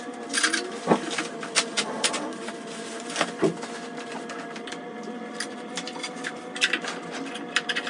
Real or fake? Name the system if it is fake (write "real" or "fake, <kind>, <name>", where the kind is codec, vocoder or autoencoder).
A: fake, vocoder, BigVGAN v2